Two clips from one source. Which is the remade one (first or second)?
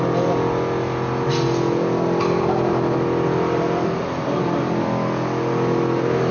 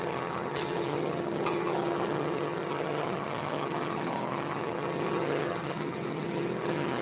second